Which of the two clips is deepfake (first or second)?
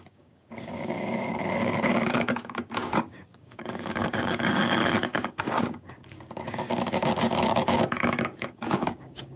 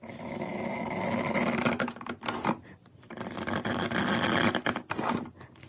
first